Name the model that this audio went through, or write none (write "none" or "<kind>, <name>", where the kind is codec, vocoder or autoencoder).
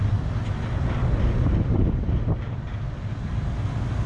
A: vocoder, BigVGAN v2